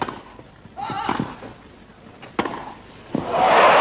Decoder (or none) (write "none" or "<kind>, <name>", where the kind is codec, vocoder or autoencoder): none